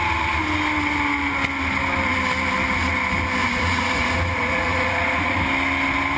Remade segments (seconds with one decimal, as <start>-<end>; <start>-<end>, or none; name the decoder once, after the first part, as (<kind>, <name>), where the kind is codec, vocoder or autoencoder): 3.4-5.4 (vocoder, Vocos)